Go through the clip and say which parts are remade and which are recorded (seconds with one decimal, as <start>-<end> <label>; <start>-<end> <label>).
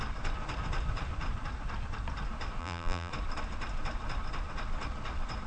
0.0-2.6 recorded; 2.6-3.1 remade; 3.1-5.5 recorded